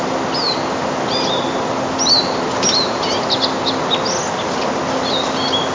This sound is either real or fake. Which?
real